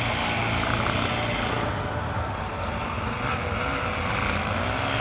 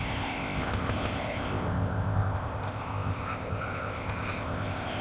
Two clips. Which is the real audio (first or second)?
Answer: first